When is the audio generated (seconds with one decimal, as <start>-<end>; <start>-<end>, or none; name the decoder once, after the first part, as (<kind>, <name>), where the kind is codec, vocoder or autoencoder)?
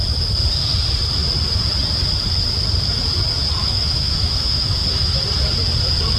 3.6-5.2 (autoencoder, DAC-VAE)